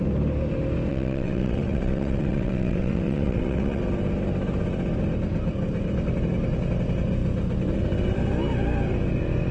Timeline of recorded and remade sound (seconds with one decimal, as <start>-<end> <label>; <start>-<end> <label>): 0.0-0.9 recorded; 0.9-3.8 remade; 3.8-9.5 recorded